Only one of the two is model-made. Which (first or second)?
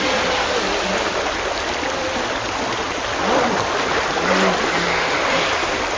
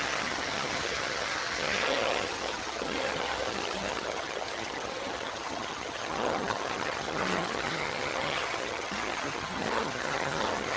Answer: second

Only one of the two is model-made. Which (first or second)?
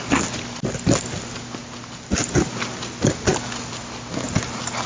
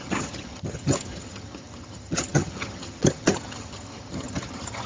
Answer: second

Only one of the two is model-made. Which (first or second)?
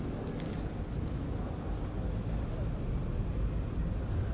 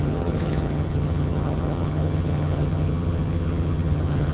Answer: second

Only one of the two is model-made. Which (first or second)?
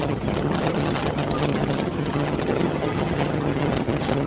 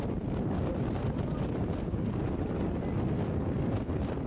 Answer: first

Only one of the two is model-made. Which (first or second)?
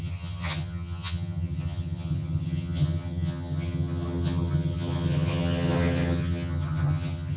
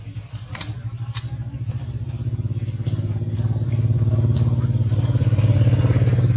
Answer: first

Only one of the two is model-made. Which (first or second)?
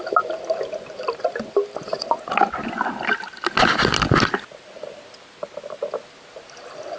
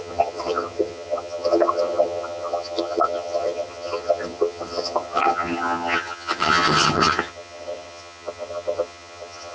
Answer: second